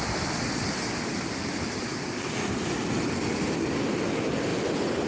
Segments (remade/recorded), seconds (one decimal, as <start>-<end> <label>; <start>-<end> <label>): 0.0-5.1 recorded